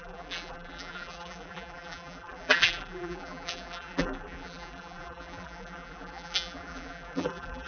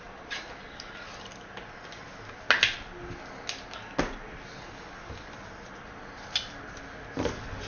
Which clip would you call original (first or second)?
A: second